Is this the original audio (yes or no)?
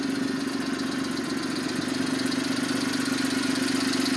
yes